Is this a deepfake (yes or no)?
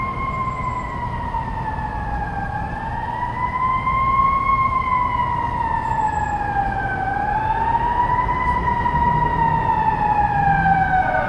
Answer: no